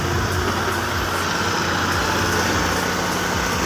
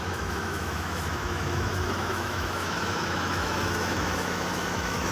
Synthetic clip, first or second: second